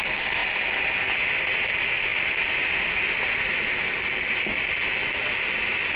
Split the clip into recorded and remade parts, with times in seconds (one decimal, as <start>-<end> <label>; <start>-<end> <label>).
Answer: 0.0-6.0 recorded

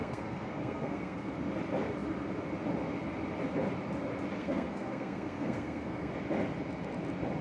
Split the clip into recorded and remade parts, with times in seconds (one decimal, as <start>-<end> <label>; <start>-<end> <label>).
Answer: 0.0-1.3 remade; 1.3-4.4 recorded; 4.4-6.1 remade; 6.1-7.4 recorded

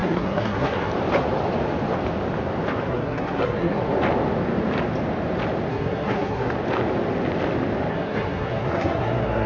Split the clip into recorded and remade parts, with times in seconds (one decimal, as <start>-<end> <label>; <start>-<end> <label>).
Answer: 0.0-0.9 remade; 0.9-2.9 recorded; 2.9-3.8 remade; 3.8-5.7 recorded; 5.7-6.5 remade; 6.5-7.9 recorded; 7.9-9.5 remade

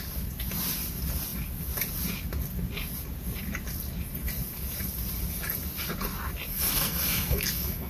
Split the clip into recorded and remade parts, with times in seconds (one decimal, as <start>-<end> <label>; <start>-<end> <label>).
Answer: 0.0-6.5 recorded; 6.5-7.9 remade

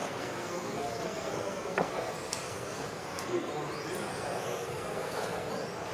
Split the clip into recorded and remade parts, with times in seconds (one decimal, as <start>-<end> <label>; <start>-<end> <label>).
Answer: 0.0-3.5 remade; 3.5-4.1 recorded; 4.1-5.5 remade; 5.5-5.9 recorded

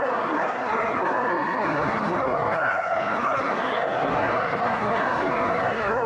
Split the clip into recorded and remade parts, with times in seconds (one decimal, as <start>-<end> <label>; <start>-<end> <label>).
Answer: 0.0-6.1 remade

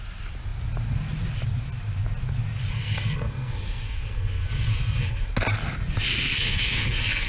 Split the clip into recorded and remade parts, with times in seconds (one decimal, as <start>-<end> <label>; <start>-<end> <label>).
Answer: 0.0-2.7 recorded; 2.7-5.3 remade; 5.3-6.3 recorded; 6.3-7.3 remade

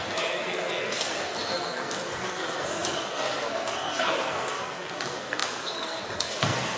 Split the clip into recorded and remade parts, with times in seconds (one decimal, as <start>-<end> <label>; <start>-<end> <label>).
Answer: 0.0-6.8 remade